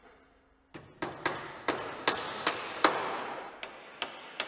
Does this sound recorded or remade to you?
recorded